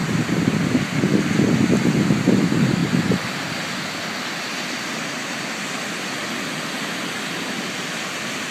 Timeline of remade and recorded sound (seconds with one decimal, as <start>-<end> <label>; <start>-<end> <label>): 0.0-8.5 recorded